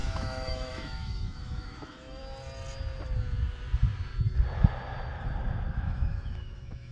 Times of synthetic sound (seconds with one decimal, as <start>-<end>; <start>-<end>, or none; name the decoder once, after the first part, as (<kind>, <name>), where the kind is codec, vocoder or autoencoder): 0.0-2.2 (autoencoder, DAC-VAE); 5.7-6.9